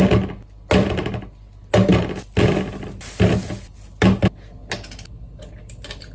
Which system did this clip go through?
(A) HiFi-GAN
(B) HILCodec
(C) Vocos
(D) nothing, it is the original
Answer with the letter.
D